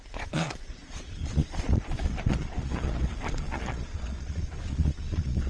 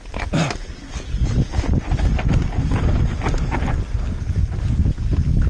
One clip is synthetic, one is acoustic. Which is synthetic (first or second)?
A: first